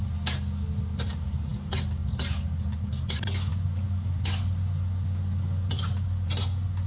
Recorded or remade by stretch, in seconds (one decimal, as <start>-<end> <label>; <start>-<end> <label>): 0.0-6.9 recorded